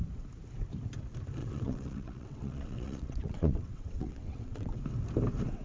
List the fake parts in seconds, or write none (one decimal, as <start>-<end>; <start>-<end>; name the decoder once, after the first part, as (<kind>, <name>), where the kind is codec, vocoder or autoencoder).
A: 1.4-4.8 (vocoder, WaveNeXt)